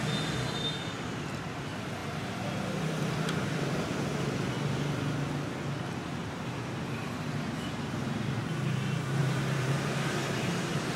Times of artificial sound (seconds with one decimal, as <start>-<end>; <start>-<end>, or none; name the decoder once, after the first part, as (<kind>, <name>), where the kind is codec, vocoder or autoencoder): 6.2-8.0 (vocoder, BigVGAN v2); 9.2-10.2